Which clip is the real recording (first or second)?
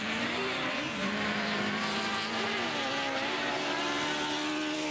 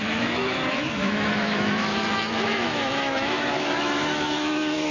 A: first